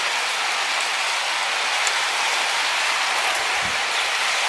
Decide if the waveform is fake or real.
real